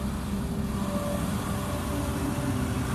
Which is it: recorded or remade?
recorded